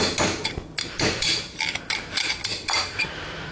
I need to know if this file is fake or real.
real